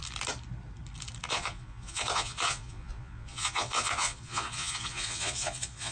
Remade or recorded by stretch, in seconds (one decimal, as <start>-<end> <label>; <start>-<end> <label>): 0.0-1.3 recorded; 1.3-5.9 remade